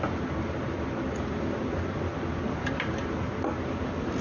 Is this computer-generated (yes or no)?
no